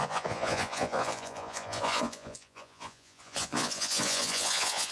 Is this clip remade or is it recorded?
remade